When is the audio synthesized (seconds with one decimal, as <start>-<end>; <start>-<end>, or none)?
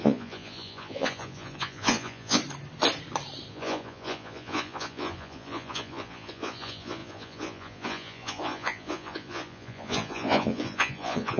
0.0-2.4; 3.5-11.4